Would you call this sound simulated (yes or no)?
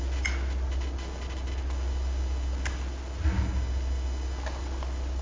no